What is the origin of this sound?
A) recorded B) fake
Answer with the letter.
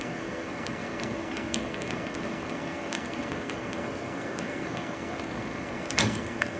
B